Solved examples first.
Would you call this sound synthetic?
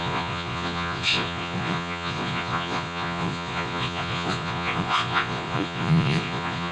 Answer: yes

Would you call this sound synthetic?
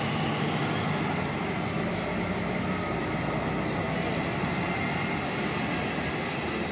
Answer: no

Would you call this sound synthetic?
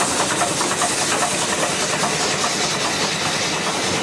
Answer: no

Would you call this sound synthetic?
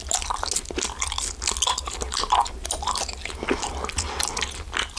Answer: no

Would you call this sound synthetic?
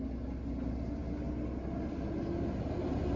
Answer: no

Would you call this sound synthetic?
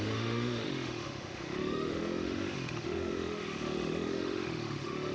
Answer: yes